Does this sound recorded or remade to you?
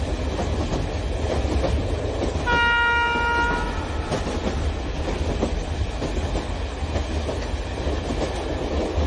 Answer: recorded